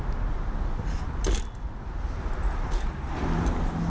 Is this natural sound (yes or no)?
yes